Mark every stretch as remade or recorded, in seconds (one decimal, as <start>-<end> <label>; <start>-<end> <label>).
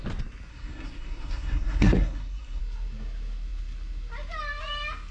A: 0.0-0.5 recorded; 0.5-2.6 remade; 2.6-5.1 recorded